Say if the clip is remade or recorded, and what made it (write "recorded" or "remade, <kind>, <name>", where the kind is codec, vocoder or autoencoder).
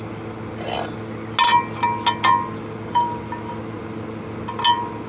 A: recorded